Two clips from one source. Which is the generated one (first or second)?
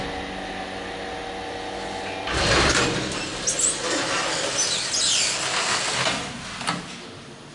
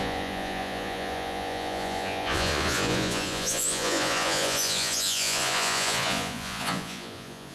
second